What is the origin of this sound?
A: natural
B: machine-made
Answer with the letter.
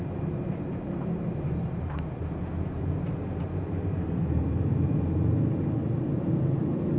B